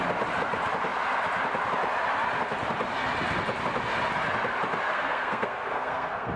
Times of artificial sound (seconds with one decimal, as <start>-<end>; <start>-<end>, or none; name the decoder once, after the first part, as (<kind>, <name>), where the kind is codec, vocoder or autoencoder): 4.9-6.4 (codec, SNAC)